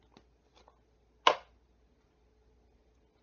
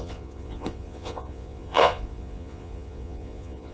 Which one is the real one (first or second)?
first